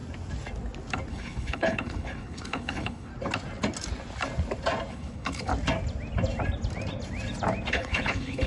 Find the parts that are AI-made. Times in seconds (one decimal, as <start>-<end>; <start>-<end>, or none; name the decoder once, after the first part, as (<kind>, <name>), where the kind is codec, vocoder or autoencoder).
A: 1.1-3.1 (codec, HILCodec); 4.9-5.5; 7.7-8.5